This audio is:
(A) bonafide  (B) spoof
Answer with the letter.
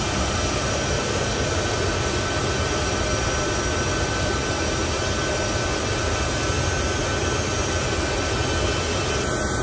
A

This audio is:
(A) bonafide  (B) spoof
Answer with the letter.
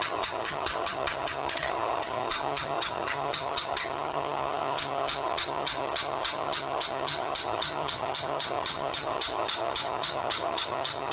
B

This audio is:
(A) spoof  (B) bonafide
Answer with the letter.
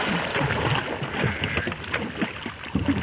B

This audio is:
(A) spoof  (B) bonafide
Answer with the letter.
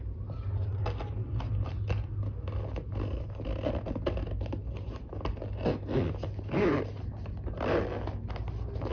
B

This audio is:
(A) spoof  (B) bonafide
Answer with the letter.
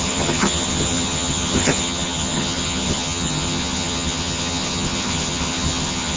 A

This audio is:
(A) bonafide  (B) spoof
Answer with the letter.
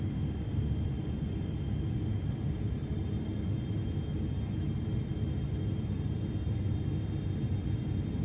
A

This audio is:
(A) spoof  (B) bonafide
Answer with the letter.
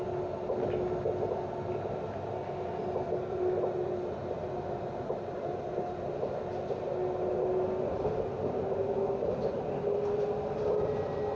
B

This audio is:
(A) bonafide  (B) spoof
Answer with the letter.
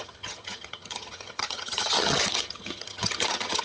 B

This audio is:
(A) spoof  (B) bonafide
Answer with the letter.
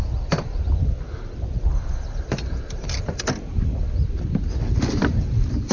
B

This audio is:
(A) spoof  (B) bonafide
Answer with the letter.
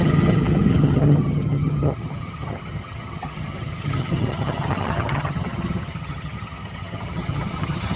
A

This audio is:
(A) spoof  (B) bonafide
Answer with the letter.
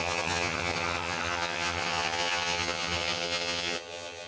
A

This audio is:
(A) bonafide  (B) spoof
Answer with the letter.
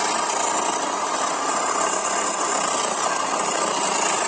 A